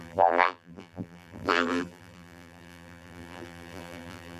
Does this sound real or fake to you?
fake